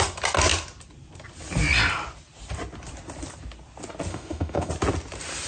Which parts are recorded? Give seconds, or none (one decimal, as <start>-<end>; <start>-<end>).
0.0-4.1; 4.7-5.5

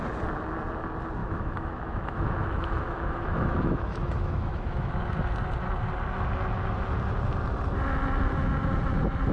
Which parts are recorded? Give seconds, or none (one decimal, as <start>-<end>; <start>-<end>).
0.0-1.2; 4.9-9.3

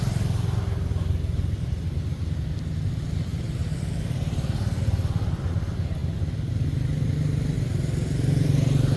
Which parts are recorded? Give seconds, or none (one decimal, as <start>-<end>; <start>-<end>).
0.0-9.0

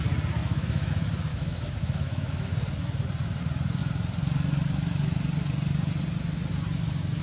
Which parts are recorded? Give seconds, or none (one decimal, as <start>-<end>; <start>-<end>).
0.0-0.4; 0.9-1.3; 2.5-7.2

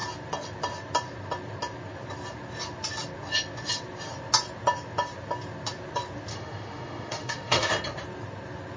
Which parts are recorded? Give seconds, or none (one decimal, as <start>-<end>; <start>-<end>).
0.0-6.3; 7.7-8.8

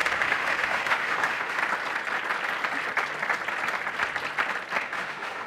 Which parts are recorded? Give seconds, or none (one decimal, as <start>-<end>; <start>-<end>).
1.6-4.8